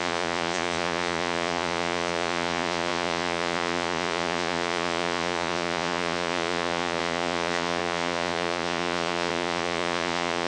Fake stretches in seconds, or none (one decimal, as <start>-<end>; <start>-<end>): 0.0-10.5